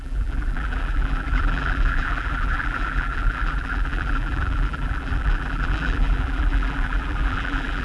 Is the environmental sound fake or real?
fake